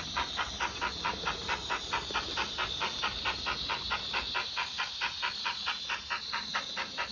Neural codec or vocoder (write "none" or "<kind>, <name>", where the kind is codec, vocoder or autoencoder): none